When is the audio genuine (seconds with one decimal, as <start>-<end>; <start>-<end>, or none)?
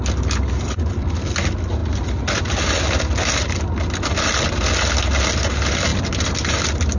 0.0-7.0